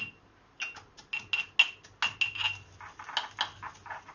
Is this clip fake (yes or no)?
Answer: no